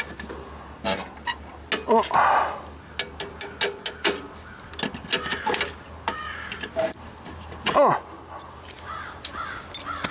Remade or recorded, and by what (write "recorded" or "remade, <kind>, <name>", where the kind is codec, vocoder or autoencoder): recorded